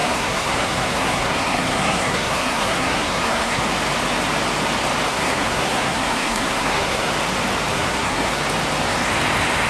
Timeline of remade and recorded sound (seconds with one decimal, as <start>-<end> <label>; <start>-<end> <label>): 0.0-3.6 remade; 3.6-5.1 recorded; 5.1-7.1 remade; 7.1-7.7 recorded; 7.7-8.4 remade; 8.4-9.7 recorded